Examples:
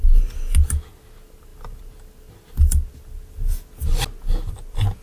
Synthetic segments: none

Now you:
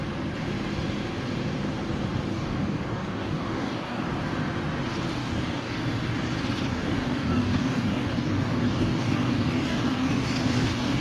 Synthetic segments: 2.3-4.1 (codec, DAC); 5.2-5.8; 6.7-11.0

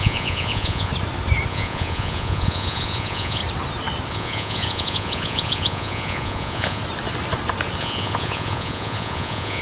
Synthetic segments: 0.0-0.9 (vocoder, Vocos); 1.5-3.4; 4.1-6.8; 7.8-9.6

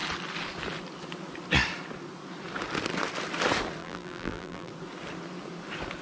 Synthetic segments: 3.8-4.7 (vocoder, BigVGAN v2)

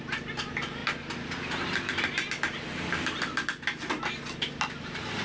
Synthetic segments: none

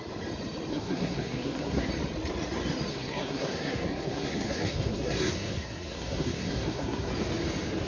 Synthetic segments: 0.7-1.9 (codec, SNAC); 2.9-7.1